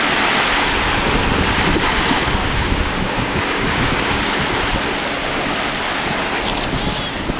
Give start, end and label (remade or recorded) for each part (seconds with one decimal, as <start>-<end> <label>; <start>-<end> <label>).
0.0-2.4 recorded; 2.4-4.4 remade; 4.4-7.4 recorded